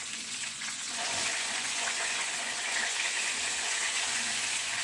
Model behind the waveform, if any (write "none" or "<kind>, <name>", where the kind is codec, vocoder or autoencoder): vocoder, Vocos